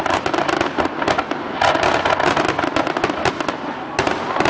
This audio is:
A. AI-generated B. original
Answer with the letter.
B